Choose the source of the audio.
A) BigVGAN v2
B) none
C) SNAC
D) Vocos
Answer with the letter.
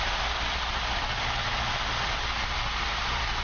A